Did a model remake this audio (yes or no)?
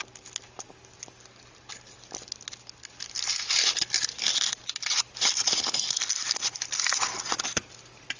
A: no